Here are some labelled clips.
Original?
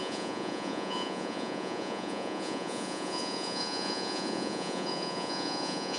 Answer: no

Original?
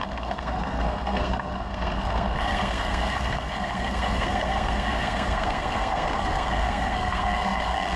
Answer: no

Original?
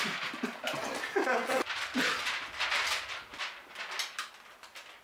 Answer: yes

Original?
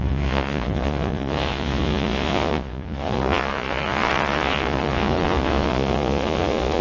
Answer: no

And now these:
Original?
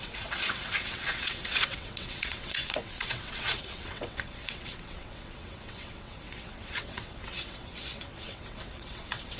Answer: no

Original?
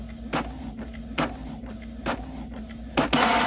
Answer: yes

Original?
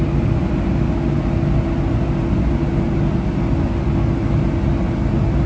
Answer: yes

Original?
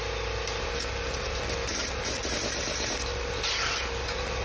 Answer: yes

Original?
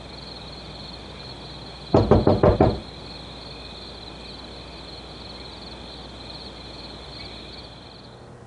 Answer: yes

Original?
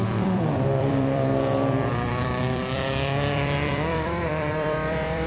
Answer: no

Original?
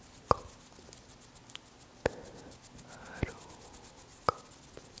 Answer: yes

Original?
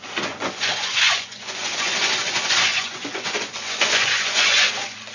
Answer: no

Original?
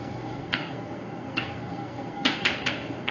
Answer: no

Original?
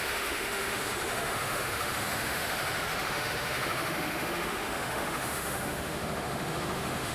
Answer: no